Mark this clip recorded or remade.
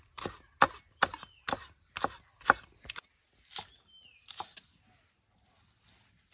recorded